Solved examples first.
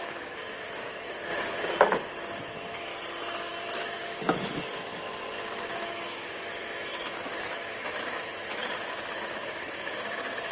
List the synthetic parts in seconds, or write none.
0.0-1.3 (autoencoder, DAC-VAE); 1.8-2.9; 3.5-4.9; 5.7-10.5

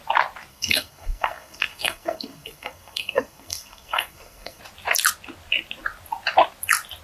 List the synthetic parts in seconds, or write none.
0.5-4.6 (codec, SNAC)

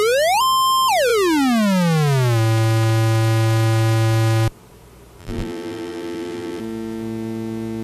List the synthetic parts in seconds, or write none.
5.2-6.6 (vocoder, BigVGAN v2)

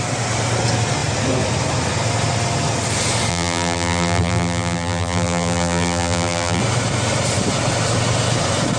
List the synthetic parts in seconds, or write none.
3.3-6.6 (vocoder, BigVGAN v2)

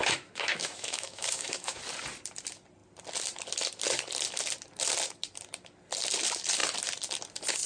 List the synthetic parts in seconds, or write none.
0.0-1.8 (autoencoder, DAC-VAE)

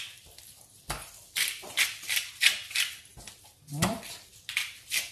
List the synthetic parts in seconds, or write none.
0.0-3.1 (vocoder, BigVGAN v2); 4.3-5.1

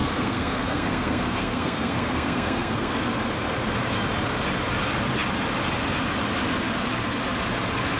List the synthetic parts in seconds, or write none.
0.0-2.9 (codec, SNAC)